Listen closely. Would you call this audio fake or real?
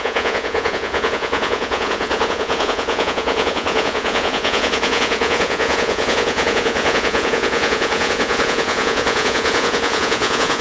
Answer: fake